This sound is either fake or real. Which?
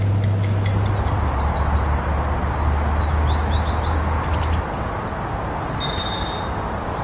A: real